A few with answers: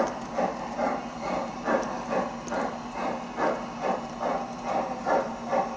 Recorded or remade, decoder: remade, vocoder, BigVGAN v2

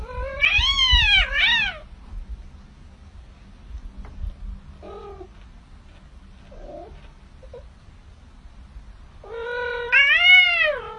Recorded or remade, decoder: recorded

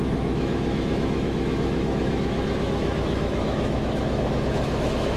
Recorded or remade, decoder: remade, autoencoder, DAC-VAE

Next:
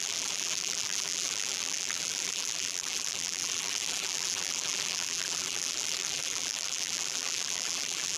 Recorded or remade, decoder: remade, vocoder, BigVGAN v2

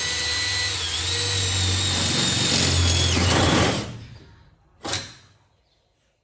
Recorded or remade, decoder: recorded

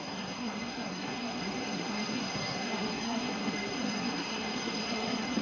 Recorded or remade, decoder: remade, codec, SNAC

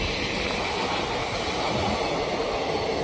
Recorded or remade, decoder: recorded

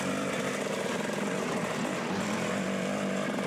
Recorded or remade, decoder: recorded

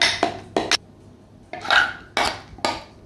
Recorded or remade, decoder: recorded